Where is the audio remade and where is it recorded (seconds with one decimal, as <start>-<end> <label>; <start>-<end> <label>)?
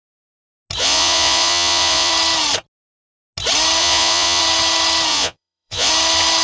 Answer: 0.0-0.8 recorded; 0.8-2.1 remade; 2.1-3.8 recorded; 3.8-4.4 remade; 4.4-5.1 recorded; 5.1-5.9 remade; 5.9-6.4 recorded